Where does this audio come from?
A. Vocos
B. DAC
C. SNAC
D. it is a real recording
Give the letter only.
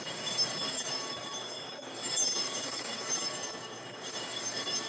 B